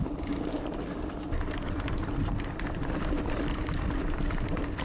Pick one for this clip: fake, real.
fake